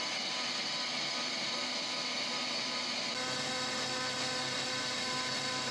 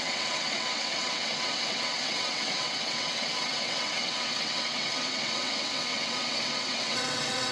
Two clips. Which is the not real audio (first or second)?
second